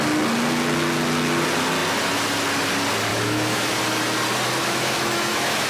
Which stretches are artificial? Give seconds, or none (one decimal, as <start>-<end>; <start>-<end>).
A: 3.1-3.8; 4.6-5.7